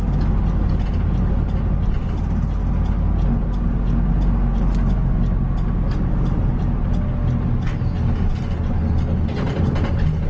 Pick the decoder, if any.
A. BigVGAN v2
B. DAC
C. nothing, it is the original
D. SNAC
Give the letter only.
C